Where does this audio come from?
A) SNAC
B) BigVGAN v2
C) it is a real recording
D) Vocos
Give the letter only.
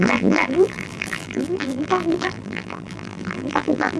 B